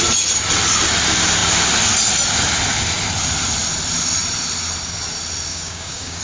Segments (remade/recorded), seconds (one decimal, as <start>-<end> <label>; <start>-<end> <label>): 0.0-5.5 recorded; 5.5-6.2 remade